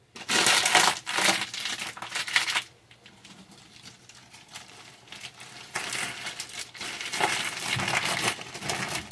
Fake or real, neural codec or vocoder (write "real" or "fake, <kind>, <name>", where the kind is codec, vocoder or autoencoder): fake, vocoder, BigVGAN v2